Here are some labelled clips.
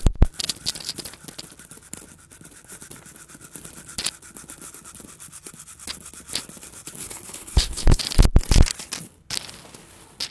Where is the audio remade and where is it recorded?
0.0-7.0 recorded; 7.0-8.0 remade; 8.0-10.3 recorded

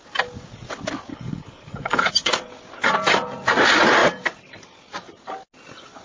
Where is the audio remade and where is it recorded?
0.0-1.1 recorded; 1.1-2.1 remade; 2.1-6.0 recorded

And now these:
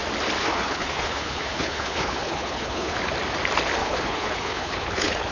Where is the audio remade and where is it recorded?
0.0-0.4 recorded; 0.4-3.0 remade; 3.0-3.8 recorded; 3.8-5.3 remade